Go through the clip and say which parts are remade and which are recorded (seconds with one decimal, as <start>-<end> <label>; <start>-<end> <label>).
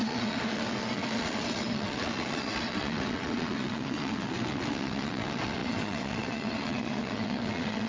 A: 0.0-7.9 remade